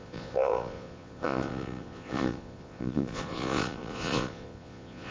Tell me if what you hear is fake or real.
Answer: fake